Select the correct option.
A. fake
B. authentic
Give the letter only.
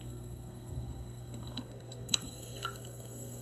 A